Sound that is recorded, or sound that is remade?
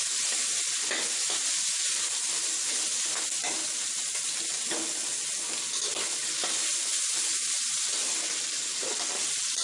recorded